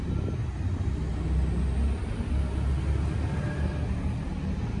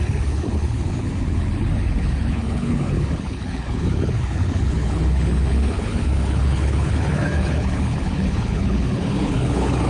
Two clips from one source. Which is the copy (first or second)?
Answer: second